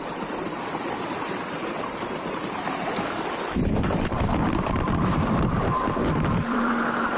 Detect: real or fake fake